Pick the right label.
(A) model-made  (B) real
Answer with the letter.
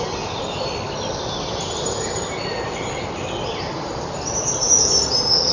B